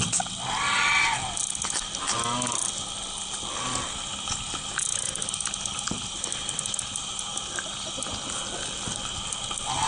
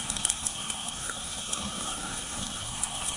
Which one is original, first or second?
first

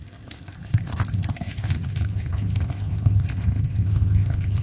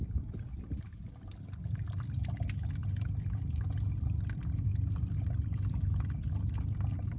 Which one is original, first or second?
second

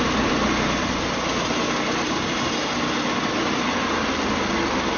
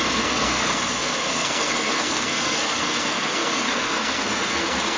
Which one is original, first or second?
first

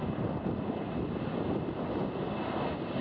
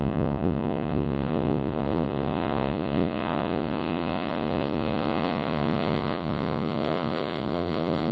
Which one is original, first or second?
first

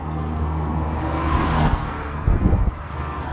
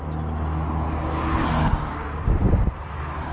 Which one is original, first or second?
second